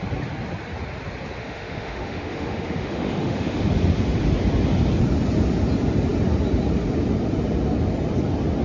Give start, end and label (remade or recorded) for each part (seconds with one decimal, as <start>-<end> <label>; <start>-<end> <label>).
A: 0.0-1.4 recorded; 1.4-3.6 remade; 3.6-8.6 recorded